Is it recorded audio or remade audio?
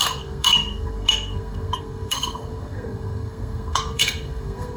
remade